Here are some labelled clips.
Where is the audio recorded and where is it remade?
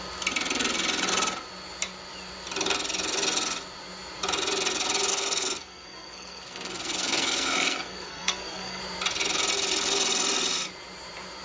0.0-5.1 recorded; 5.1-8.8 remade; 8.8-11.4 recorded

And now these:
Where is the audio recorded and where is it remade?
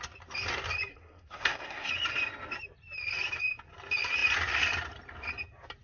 0.0-0.9 recorded; 0.9-1.9 remade; 1.9-5.8 recorded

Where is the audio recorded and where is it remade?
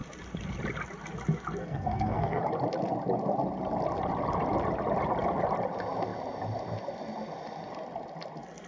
0.0-1.6 recorded; 1.6-2.4 remade; 2.4-8.7 recorded